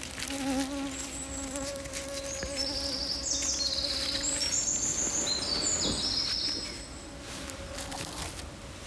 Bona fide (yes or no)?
yes